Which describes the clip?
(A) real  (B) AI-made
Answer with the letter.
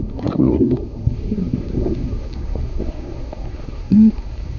B